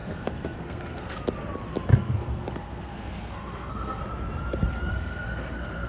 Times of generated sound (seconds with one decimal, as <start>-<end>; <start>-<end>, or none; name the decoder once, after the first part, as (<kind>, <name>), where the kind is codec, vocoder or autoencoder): 0.0-1.2 (codec, SNAC); 1.9-4.0; 4.9-5.9